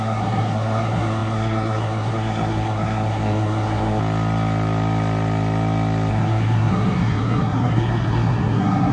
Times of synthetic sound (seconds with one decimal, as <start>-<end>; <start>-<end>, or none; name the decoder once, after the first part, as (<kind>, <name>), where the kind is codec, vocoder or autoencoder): 0.0-4.0 (codec, SNAC); 6.1-8.9